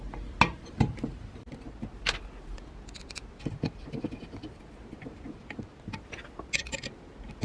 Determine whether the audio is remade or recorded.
recorded